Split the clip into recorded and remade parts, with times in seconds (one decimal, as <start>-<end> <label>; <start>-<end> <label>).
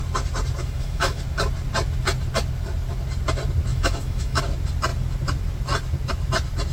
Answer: 0.0-0.6 recorded; 0.6-1.2 remade; 1.2-3.7 recorded; 3.7-4.4 remade; 4.4-6.7 recorded